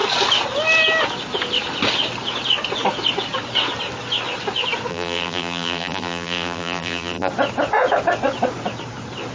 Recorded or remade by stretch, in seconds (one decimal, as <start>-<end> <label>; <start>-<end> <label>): 0.0-4.9 recorded; 4.9-7.3 remade; 7.3-9.3 recorded